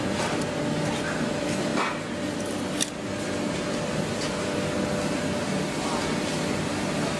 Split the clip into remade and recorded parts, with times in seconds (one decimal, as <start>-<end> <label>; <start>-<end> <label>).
0.0-7.2 recorded